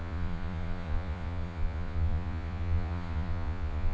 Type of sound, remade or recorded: remade